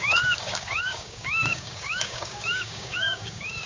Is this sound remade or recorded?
remade